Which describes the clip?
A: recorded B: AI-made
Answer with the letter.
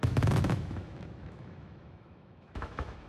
B